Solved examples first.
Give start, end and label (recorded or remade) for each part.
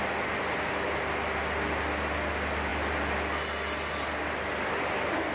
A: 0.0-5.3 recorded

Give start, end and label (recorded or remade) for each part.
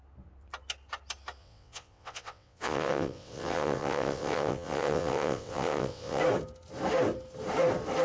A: 0.0-1.4 recorded; 1.4-6.2 remade; 6.2-8.0 recorded